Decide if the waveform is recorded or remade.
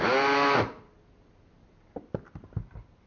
recorded